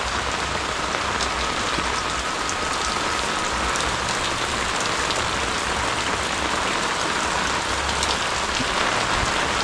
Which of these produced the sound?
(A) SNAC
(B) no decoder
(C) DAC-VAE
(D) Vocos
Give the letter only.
B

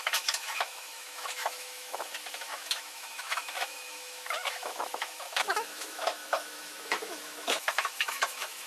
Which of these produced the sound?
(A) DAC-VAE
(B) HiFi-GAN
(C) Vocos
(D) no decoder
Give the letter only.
A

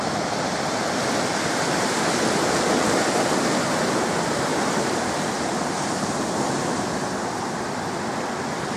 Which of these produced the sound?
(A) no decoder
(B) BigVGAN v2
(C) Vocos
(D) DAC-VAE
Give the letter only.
A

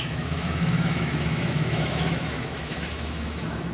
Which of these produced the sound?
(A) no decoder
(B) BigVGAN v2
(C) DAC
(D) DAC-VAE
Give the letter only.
D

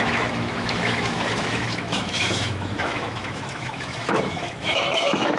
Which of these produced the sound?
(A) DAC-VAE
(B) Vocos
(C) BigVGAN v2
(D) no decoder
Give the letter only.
A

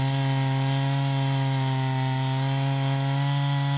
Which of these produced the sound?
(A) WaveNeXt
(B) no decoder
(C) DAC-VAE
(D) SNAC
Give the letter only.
B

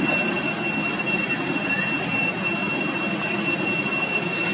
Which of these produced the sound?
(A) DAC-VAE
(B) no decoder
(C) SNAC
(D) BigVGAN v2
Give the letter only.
B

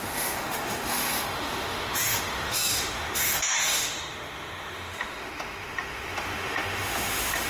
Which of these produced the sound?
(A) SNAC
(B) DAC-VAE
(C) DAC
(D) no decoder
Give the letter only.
B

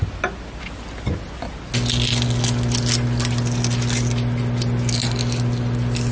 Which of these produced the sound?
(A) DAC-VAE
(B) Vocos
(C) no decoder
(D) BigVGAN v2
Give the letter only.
C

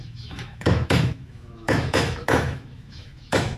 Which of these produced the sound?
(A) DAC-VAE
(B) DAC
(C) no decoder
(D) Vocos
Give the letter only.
A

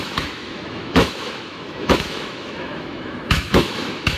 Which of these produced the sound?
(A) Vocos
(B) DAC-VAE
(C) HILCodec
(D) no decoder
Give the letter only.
B